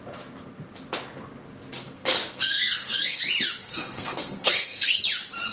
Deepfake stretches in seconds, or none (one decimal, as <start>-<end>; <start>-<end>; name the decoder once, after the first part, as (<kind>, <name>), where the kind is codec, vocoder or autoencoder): 1.8-3.2 (codec, SNAC); 3.6-5.0